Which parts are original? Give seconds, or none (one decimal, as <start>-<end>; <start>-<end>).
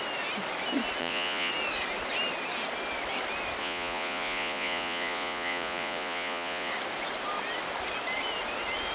0.0-1.0; 1.5-3.6; 6.7-8.9